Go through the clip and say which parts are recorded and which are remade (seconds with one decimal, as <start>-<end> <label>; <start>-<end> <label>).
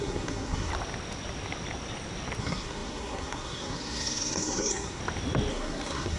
0.0-0.7 remade; 0.7-2.4 recorded; 2.4-5.0 remade; 5.0-5.5 recorded; 5.5-6.2 remade